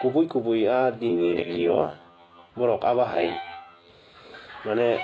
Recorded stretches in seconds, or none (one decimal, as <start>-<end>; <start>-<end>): 0.0-1.1; 2.5-3.1; 3.9-5.0